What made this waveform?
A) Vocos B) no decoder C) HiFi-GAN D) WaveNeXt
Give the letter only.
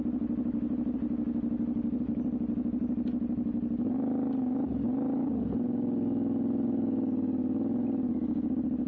B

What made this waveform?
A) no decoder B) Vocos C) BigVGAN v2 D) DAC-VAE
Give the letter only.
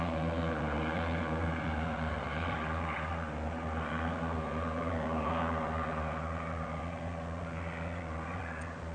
B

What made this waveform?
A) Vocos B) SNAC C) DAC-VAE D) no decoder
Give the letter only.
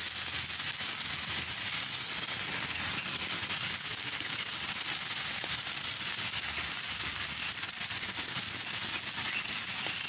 D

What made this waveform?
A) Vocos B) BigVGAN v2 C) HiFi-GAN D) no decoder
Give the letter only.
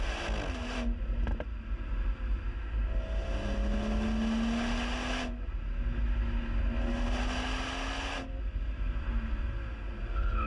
D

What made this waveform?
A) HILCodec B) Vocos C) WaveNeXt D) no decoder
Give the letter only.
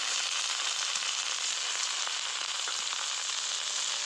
D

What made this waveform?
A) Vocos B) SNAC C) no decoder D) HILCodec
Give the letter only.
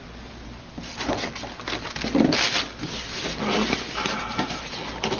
C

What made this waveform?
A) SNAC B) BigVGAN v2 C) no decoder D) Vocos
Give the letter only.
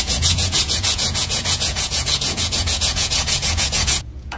D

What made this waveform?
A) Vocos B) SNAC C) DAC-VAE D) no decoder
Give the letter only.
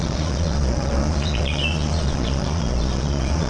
A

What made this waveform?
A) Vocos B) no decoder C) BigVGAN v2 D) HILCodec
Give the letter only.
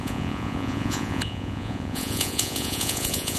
A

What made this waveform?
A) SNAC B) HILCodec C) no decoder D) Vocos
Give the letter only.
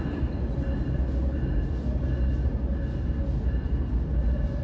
C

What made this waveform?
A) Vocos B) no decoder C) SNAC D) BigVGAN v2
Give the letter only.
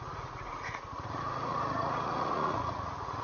A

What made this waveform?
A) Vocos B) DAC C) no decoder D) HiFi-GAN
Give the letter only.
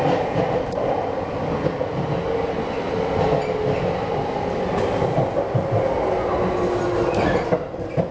C